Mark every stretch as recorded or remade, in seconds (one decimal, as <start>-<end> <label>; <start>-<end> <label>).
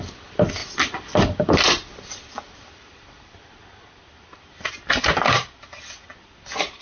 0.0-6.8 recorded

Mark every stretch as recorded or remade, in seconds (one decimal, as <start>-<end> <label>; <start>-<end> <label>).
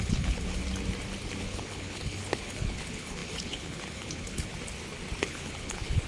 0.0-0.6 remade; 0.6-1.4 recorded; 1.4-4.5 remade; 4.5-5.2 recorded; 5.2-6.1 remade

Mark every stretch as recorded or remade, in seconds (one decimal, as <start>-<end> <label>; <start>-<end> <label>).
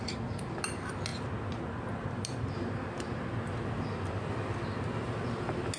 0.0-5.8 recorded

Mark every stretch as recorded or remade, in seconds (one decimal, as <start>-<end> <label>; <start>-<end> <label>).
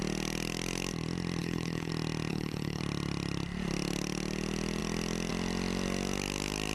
0.0-1.4 recorded; 1.4-1.9 remade; 1.9-2.3 recorded; 2.3-2.8 remade; 2.8-6.7 recorded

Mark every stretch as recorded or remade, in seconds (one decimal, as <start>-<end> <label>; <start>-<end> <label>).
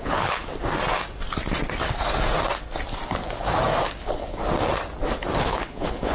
0.0-0.4 remade; 0.4-4.0 recorded; 4.0-4.4 remade; 4.4-5.4 recorded; 5.4-6.1 remade